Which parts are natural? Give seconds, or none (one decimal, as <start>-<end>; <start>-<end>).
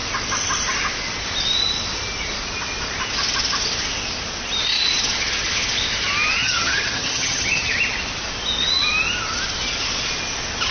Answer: 0.0-6.4; 7.7-10.7